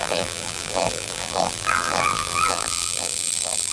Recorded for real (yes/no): no